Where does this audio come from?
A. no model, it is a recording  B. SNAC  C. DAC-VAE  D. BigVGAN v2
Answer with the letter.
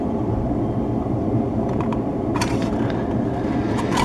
D